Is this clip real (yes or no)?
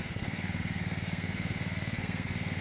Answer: no